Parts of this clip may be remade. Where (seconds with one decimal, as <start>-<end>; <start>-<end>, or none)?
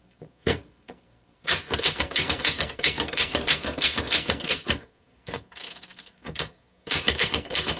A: 0.0-7.8